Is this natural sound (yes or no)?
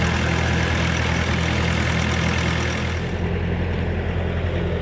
yes